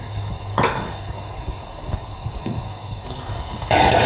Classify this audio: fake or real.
fake